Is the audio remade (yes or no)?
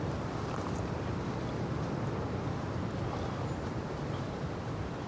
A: yes